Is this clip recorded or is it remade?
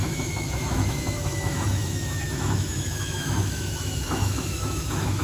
remade